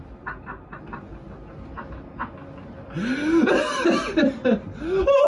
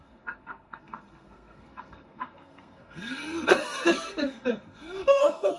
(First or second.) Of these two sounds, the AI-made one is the second